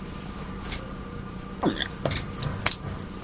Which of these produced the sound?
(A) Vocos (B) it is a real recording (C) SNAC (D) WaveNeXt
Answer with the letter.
B